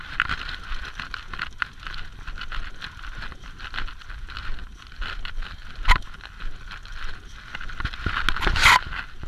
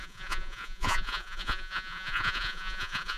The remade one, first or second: second